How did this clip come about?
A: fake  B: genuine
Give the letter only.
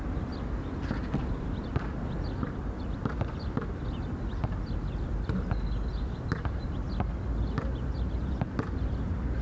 B